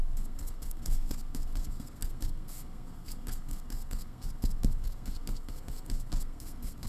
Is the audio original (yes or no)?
no